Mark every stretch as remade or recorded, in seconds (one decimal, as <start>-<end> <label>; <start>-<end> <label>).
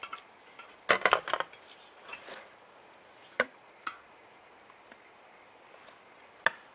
0.0-2.1 recorded; 2.1-4.5 remade; 4.5-6.7 recorded